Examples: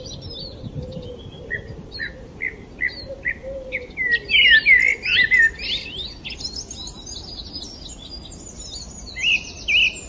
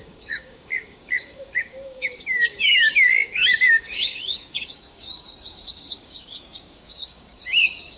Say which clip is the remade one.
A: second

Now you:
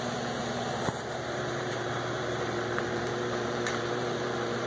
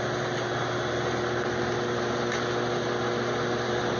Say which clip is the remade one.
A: first